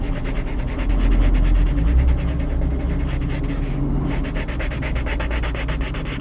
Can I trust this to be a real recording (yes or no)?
yes